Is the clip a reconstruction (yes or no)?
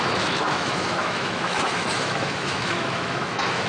yes